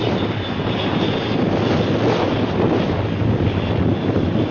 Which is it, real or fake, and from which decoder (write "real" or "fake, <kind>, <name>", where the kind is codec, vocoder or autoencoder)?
real